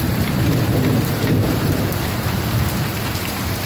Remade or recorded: remade